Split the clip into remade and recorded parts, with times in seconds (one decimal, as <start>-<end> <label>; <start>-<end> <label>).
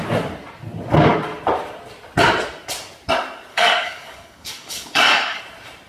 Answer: 0.0-3.5 recorded; 3.5-5.4 remade; 5.4-5.9 recorded